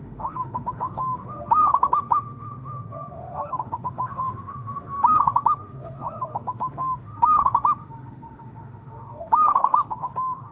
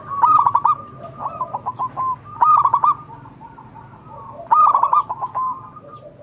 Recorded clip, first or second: second